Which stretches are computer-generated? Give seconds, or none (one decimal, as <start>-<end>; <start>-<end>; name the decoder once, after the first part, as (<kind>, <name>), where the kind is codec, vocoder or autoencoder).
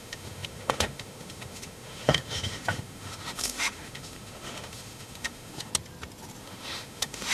0.0-5.7 (autoencoder, DAC-VAE); 6.4-7.3